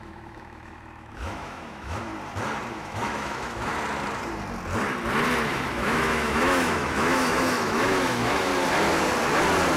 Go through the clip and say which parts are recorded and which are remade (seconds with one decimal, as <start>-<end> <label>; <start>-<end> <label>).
0.0-2.1 remade; 2.1-2.7 recorded; 2.7-3.7 remade; 3.7-5.5 recorded; 5.5-8.5 remade; 8.5-9.8 recorded